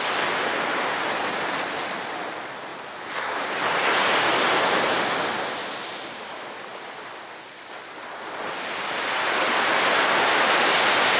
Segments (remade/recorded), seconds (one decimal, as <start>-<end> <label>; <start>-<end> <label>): 0.0-2.7 recorded; 2.7-3.9 remade; 3.9-6.7 recorded; 6.7-7.4 remade; 7.4-11.2 recorded